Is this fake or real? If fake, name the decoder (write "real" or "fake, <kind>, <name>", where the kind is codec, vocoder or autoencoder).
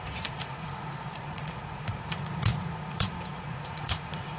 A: fake, vocoder, Vocos